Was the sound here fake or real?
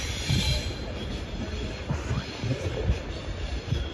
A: real